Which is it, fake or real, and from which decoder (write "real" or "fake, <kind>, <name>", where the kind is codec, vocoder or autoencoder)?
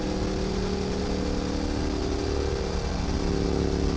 real